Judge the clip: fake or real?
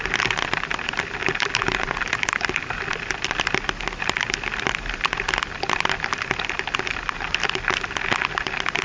real